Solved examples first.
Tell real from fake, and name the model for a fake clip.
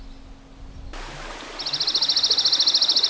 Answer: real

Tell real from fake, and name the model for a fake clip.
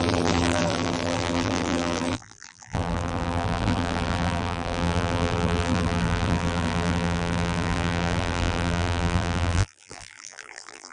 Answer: fake, vocoder, BigVGAN v2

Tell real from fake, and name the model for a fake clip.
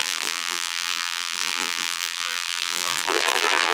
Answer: fake, vocoder, BigVGAN v2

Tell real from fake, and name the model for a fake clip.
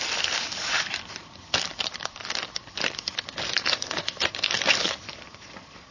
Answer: fake, vocoder, BigVGAN v2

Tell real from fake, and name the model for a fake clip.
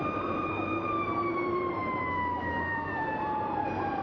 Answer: fake, vocoder, BigVGAN v2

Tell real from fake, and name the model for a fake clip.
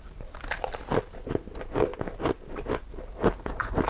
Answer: fake, vocoder, BigVGAN v2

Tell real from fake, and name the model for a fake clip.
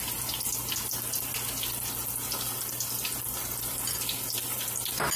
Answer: real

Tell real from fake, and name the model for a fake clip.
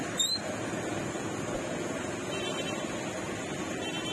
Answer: real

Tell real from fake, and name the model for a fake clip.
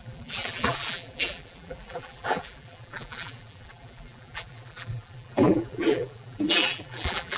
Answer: fake, vocoder, BigVGAN v2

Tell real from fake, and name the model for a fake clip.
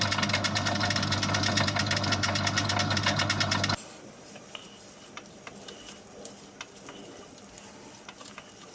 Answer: real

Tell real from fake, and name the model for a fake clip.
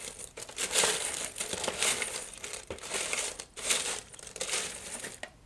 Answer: fake, vocoder, BigVGAN v2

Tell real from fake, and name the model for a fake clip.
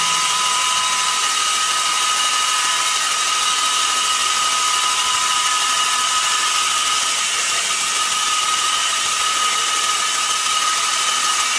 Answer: fake, vocoder, BigVGAN v2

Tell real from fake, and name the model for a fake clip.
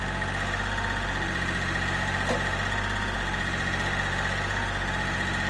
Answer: real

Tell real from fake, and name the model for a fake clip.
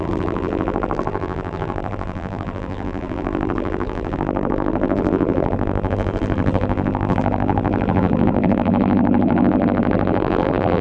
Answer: fake, vocoder, BigVGAN v2